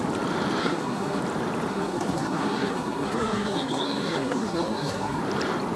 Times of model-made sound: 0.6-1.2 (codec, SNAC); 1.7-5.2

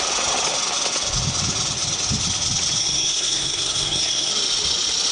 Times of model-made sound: 2.8-4.3 (codec, SNAC)